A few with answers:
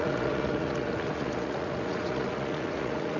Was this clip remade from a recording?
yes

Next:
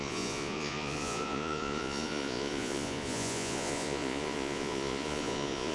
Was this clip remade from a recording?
yes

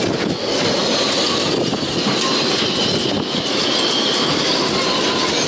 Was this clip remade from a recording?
no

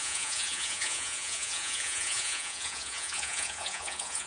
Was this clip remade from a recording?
yes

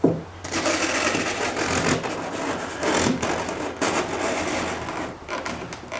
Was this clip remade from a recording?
no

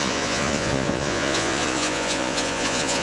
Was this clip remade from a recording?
yes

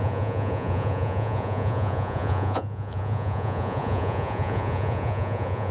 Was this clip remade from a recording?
yes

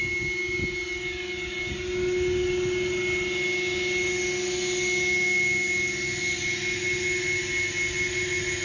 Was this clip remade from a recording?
no